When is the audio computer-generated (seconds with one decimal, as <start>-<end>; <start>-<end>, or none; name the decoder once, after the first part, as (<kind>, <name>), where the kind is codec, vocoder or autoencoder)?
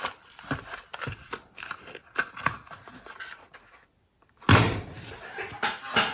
none